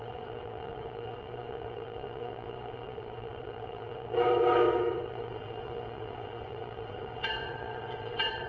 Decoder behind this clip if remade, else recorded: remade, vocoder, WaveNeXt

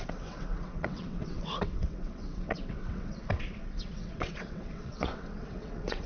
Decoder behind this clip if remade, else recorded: remade, vocoder, WaveNeXt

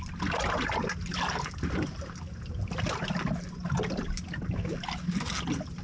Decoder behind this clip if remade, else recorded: recorded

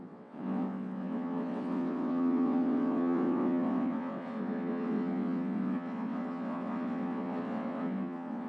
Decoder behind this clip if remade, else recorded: remade, vocoder, WaveNeXt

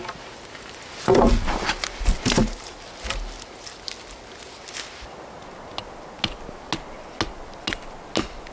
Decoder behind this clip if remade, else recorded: recorded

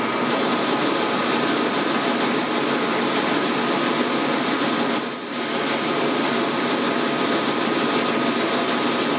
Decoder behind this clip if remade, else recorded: recorded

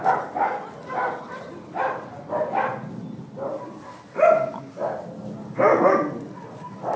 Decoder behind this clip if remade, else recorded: recorded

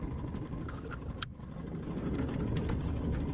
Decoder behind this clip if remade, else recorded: recorded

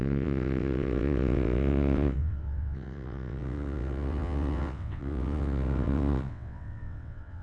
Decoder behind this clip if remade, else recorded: remade, vocoder, WaveNeXt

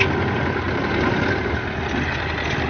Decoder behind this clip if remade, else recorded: recorded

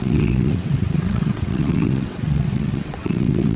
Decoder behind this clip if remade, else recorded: remade, vocoder, WaveNeXt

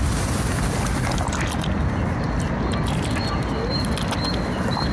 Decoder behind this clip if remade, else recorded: recorded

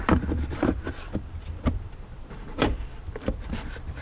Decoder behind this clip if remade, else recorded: recorded